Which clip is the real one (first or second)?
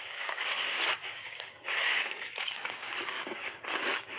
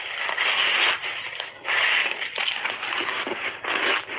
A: second